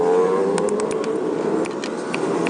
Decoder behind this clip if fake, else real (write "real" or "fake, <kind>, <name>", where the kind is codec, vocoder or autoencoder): real